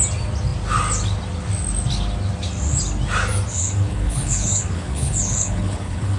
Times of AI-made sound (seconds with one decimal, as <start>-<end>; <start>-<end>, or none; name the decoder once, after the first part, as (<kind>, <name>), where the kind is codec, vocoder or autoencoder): 3.5-6.2 (codec, HILCodec)

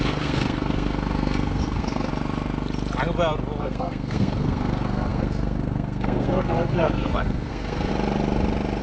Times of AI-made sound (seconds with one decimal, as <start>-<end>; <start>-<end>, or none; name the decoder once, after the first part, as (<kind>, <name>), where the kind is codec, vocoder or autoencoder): 0.0-2.1 (codec, SNAC); 3.6-7.9